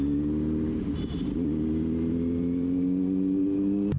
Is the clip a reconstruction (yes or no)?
no